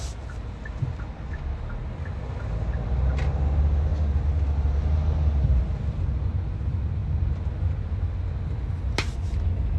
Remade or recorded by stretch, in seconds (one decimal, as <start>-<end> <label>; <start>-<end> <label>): 0.0-9.8 recorded